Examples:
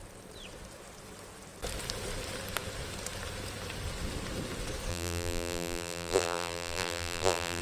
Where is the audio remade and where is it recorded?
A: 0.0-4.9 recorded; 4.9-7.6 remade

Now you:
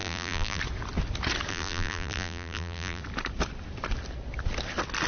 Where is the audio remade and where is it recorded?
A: 0.0-0.6 remade; 0.6-1.5 recorded; 1.5-3.0 remade; 3.0-5.1 recorded

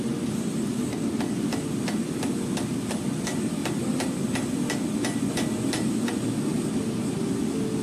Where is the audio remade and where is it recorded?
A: 0.0-7.8 recorded

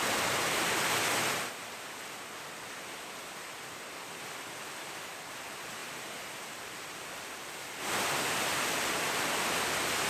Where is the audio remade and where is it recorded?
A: 0.0-5.8 recorded; 5.8-10.1 remade

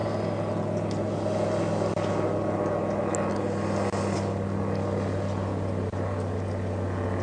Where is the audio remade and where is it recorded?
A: 0.0-7.2 recorded

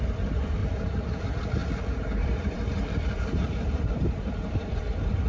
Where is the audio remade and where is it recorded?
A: 0.0-0.6 recorded; 0.6-1.2 remade; 1.2-1.6 recorded; 1.6-4.8 remade; 4.8-5.3 recorded

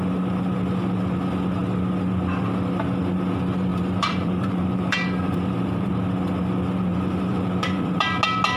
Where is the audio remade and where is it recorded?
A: 0.0-3.7 recorded; 3.7-5.9 remade; 5.9-6.9 recorded; 6.9-8.2 remade; 8.2-8.6 recorded